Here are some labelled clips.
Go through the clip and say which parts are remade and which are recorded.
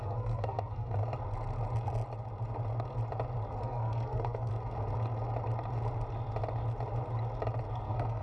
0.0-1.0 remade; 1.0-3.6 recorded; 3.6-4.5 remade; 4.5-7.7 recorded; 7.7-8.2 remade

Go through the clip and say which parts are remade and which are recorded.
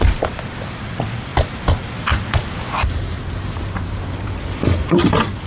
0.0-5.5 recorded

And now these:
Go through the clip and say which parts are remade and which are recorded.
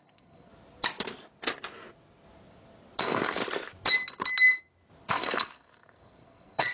0.0-0.5 remade; 0.5-3.0 recorded; 3.0-3.4 remade; 3.4-5.1 recorded; 5.1-6.7 remade